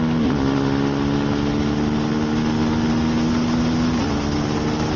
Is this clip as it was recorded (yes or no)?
yes